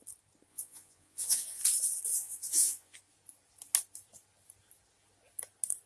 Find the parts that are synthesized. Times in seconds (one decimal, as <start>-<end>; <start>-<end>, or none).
0.5-1.6; 2.1-3.0